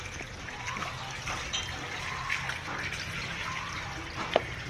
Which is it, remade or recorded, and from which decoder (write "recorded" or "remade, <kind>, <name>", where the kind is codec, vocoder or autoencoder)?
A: recorded